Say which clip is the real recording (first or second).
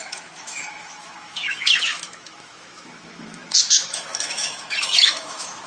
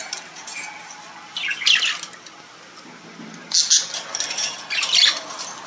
second